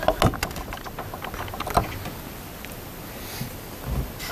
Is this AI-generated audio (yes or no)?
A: no